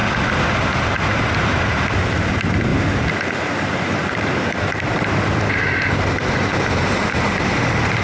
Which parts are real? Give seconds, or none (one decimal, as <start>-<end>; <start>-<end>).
0.0-2.7; 7.5-8.0